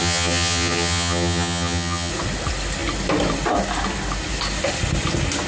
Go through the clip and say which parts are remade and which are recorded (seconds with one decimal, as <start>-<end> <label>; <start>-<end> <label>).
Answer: 0.0-2.1 remade; 2.1-5.5 recorded